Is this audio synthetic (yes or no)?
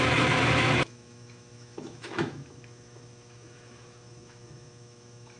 yes